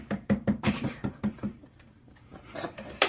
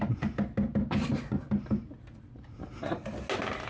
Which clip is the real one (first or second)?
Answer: second